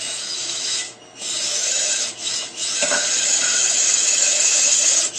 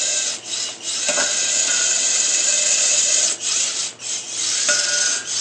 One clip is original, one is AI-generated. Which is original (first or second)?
second